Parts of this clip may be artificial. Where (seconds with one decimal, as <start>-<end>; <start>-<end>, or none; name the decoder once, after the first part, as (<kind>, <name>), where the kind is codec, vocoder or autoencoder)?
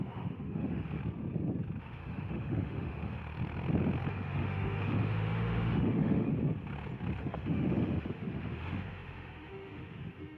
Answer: 0.0-1.0 (autoencoder, DAC-VAE); 1.8-3.2; 4.1-6.3; 7.2-10.4